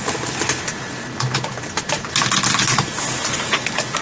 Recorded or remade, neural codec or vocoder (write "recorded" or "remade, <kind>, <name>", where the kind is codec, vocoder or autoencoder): recorded